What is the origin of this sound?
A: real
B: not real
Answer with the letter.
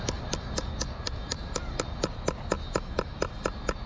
A